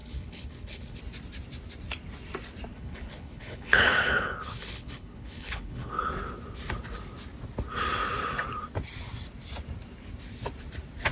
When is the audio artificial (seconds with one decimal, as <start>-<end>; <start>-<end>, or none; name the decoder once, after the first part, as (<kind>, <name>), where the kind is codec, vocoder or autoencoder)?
0.0-1.0 (codec, HILCodec); 2.7-6.1